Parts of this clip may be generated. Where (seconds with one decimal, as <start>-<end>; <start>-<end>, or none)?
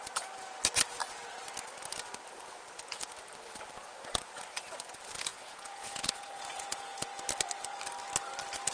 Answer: 5.3-7.2